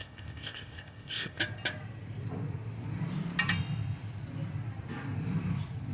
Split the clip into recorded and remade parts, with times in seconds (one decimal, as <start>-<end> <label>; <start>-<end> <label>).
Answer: 0.0-1.4 remade; 1.4-5.9 recorded